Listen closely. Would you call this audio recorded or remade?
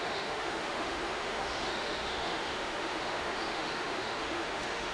remade